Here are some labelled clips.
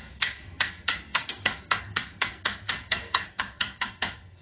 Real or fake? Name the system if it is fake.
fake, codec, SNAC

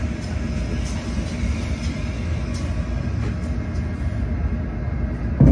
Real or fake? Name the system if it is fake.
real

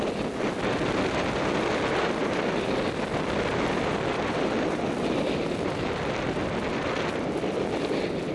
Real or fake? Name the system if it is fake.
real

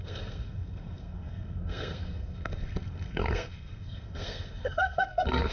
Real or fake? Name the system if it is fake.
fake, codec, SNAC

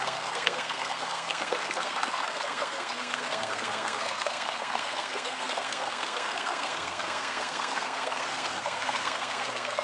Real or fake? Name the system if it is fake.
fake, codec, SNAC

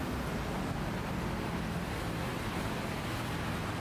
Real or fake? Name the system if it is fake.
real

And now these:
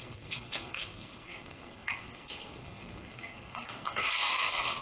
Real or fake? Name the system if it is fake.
fake, codec, SNAC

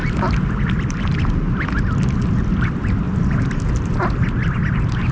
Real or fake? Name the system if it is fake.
real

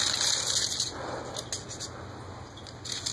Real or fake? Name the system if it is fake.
real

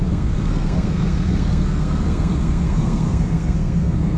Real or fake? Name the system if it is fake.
fake, codec, SNAC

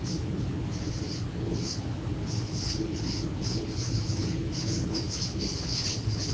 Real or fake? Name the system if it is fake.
fake, codec, HILCodec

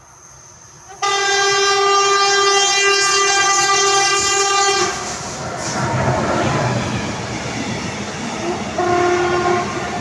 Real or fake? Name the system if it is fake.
real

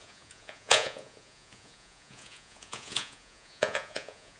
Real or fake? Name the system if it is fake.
fake, vocoder, Vocos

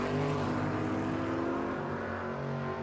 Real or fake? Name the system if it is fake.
real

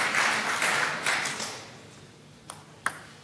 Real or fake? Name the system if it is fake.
real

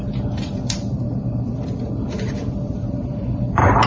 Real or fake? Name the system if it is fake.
fake, vocoder, BigVGAN v2